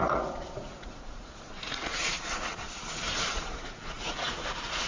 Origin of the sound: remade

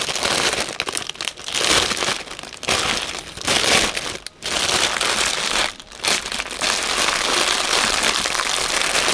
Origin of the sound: recorded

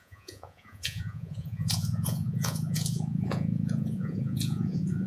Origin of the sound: remade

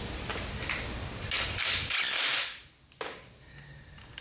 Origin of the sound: recorded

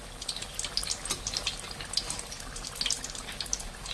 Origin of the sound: recorded